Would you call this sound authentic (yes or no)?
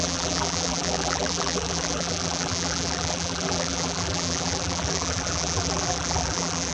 no